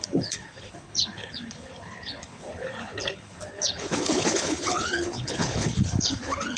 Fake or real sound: fake